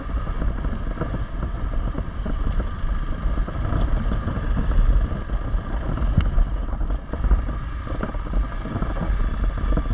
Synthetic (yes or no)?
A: no